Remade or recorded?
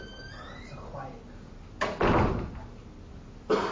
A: recorded